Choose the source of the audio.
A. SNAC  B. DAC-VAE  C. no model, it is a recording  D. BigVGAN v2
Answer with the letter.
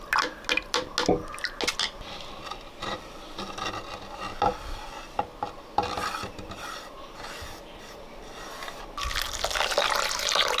C